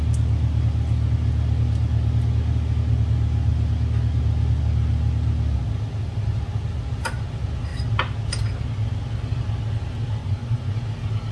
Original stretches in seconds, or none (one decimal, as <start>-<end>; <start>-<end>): 0.0-10.2; 10.7-11.3